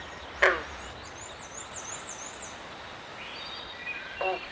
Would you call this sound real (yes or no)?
yes